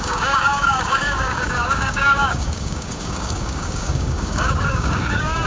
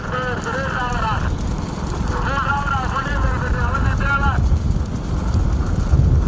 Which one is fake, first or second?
first